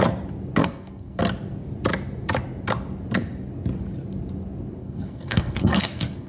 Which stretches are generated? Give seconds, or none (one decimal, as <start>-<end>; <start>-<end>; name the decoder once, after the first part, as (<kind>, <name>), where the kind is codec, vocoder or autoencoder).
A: 0.6-1.2 (codec, SNAC); 4.8-6.3